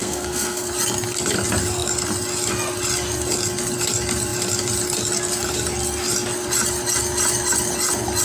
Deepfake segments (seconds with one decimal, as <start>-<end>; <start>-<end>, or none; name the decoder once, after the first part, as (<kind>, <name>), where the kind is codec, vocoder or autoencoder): 0.0-0.7 (codec, SNAC)